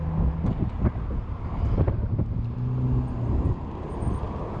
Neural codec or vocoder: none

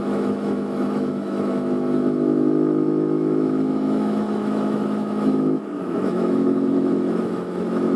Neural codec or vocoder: autoencoder, DAC-VAE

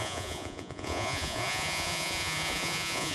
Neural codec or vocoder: vocoder, Vocos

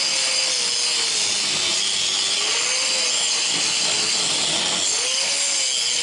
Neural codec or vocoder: none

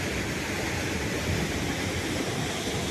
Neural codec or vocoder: none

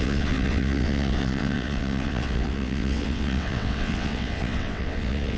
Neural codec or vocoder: vocoder, WaveNeXt